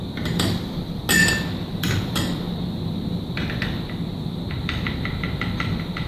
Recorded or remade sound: recorded